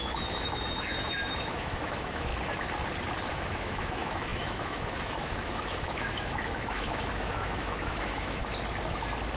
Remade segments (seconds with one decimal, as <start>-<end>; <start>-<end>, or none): 0.0-2.3; 3.3-8.4